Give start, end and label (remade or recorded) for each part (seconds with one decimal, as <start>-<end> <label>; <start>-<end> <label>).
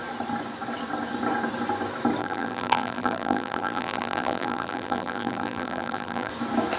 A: 0.0-2.2 recorded; 2.2-6.3 remade; 6.3-6.8 recorded